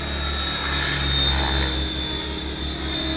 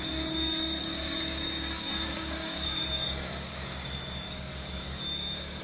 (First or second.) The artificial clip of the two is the second